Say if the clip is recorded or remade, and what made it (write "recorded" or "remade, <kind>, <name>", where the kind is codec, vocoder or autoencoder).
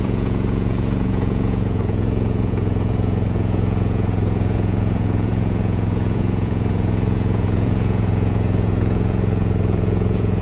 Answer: remade, vocoder, Vocos